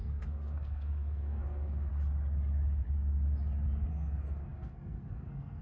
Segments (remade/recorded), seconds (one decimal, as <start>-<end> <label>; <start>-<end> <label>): 0.0-1.9 remade; 1.9-3.9 recorded; 3.9-5.6 remade